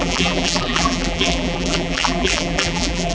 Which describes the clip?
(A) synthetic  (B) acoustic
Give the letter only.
A